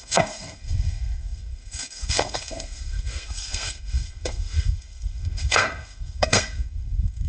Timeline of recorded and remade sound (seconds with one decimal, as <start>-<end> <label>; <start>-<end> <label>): 0.0-7.3 remade

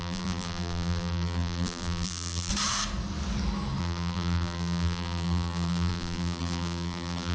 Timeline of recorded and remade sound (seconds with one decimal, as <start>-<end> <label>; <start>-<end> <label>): 0.0-2.5 remade; 2.5-3.8 recorded; 3.8-7.3 remade

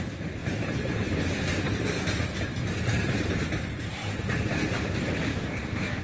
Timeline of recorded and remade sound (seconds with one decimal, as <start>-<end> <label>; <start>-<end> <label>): 0.0-5.3 recorded; 5.3-6.0 remade

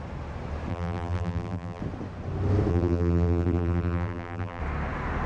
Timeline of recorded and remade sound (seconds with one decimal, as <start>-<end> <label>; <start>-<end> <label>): 0.0-0.7 recorded; 0.7-1.8 remade; 1.8-2.7 recorded; 2.7-4.6 remade; 4.6-5.3 recorded